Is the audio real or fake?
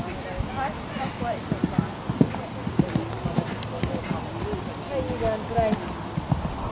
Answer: real